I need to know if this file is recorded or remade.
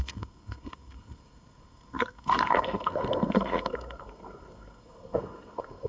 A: remade